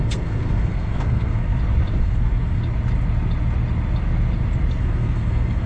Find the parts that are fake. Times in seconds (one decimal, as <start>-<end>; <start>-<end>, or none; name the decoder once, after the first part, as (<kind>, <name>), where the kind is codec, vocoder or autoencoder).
0.0-1.5 (codec, SNAC); 2.0-2.6; 4.8-5.7